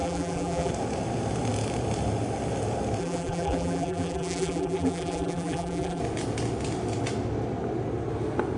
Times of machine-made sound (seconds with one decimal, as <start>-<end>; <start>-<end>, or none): 0.0-0.7; 3.0-6.0